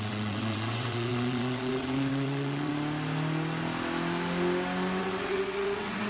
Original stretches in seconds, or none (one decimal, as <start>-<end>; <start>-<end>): 2.7-5.0